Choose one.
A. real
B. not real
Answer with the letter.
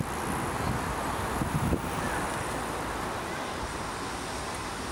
A